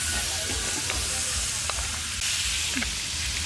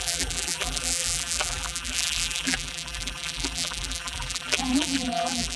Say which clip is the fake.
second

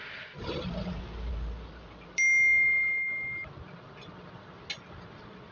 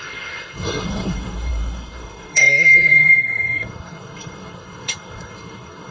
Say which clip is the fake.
second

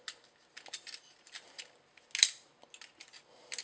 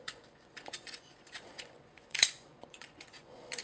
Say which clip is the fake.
second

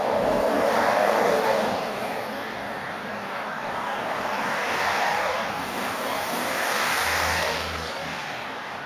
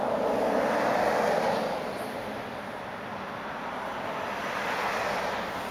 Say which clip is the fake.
first